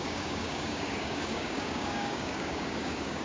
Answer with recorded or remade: remade